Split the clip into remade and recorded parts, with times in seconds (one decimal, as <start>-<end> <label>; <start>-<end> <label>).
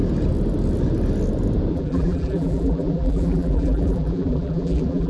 0.0-1.7 recorded; 1.7-5.1 remade